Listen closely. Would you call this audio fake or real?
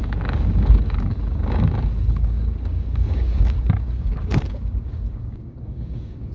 fake